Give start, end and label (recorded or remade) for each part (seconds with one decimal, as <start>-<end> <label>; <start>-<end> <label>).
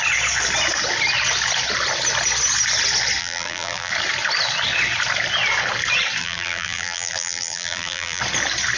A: 0.0-3.2 recorded; 3.2-3.9 remade; 3.9-6.2 recorded; 6.2-8.2 remade; 8.2-8.8 recorded